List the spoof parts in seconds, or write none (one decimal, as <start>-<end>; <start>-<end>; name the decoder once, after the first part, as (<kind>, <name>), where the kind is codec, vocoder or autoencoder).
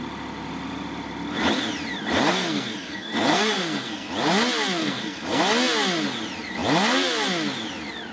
2.3-4.1 (codec, SNAC); 4.8-5.4